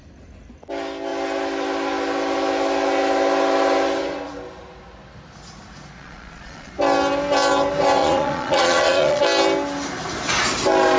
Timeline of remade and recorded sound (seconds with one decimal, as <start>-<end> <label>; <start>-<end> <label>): 0.0-6.0 recorded; 6.0-6.7 remade; 6.7-8.0 recorded; 8.0-9.2 remade; 9.2-11.0 recorded